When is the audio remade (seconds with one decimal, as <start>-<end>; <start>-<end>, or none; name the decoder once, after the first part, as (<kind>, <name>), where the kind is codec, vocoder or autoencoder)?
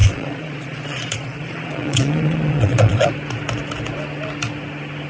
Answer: 0.0-3.1 (vocoder, Vocos)